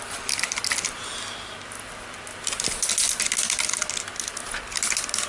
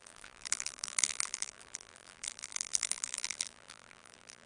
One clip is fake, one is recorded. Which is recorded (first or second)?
first